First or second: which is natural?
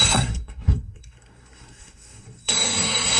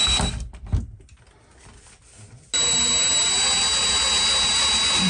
second